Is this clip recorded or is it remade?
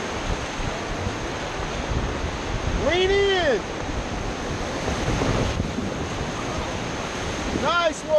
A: recorded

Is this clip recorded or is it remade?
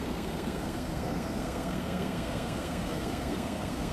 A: remade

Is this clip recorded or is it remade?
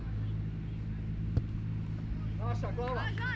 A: recorded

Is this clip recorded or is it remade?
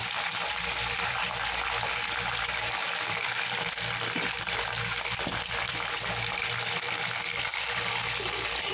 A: remade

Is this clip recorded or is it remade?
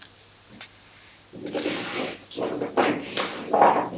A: recorded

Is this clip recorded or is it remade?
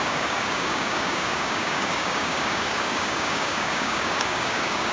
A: remade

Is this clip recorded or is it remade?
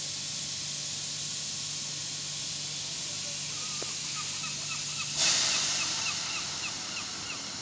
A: recorded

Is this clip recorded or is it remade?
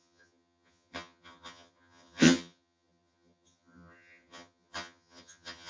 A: remade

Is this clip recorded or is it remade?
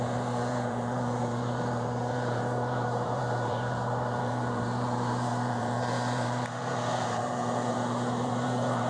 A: remade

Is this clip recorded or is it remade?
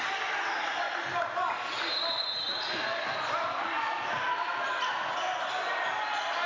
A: recorded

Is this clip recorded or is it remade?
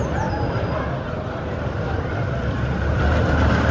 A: recorded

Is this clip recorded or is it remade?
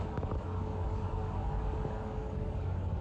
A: remade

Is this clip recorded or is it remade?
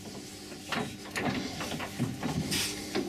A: recorded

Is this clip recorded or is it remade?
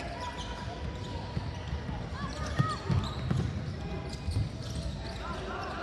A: recorded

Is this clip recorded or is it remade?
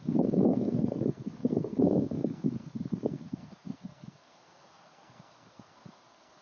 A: remade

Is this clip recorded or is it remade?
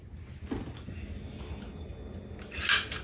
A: recorded